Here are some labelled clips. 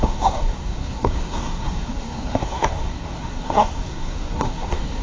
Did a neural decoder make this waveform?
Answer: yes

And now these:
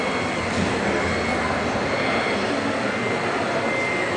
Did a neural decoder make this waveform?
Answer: no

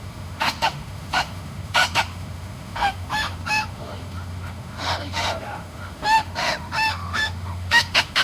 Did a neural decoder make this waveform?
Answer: yes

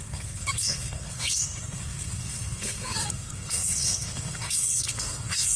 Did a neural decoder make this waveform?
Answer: yes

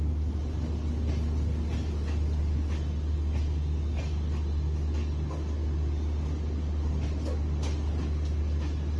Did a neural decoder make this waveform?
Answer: no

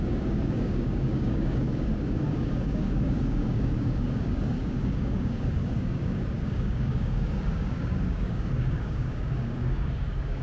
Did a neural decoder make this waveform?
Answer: yes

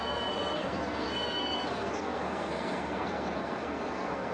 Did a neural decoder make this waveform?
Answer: yes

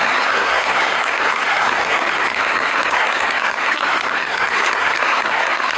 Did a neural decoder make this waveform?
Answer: yes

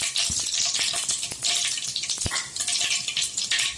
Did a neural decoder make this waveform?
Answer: no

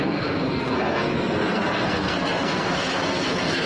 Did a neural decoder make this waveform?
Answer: yes